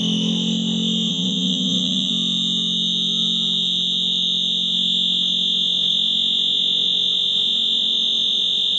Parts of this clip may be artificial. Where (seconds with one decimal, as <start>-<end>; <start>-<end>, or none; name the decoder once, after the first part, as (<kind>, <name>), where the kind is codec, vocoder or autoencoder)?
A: 1.1-2.1 (vocoder, WaveNeXt)

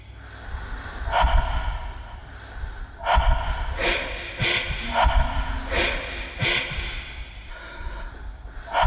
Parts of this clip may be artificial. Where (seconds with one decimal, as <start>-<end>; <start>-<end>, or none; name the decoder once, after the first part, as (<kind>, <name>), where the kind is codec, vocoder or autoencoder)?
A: 7.5-8.1 (codec, SNAC)

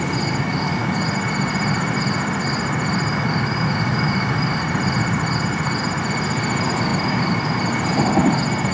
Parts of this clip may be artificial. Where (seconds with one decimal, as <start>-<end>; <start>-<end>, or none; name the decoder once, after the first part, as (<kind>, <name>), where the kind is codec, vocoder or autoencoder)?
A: 6.9-7.6 (vocoder, BigVGAN v2)

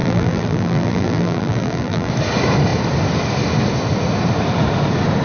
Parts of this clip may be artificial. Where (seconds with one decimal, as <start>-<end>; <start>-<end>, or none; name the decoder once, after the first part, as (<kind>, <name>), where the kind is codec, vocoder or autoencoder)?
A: 0.0-2.1 (vocoder, BigVGAN v2)

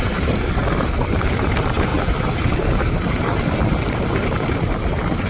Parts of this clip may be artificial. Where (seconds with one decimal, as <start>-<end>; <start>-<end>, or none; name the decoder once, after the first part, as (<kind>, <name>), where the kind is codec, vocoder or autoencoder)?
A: none